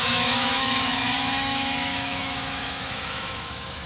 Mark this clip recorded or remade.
remade